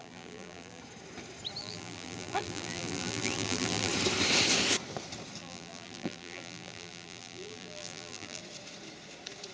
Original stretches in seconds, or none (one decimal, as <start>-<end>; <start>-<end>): 0.8-1.6; 3.9-5.4; 8.4-9.5